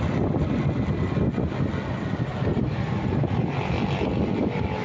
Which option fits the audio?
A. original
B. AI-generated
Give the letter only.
A